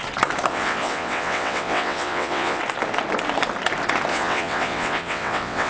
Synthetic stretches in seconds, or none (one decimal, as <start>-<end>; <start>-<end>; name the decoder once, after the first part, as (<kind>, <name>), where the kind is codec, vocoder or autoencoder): 0.5-2.6 (vocoder, WaveNeXt); 4.1-5.7